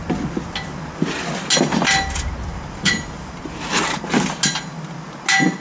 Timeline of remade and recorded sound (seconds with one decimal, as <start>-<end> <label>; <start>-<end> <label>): 0.0-2.5 recorded; 2.5-3.8 remade; 3.8-5.6 recorded